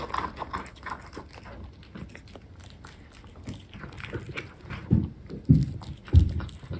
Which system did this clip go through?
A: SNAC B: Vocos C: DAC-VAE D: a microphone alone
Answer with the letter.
D